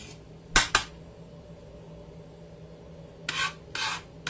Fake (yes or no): no